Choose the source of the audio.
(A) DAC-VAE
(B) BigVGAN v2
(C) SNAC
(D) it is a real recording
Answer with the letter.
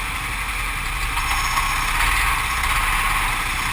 D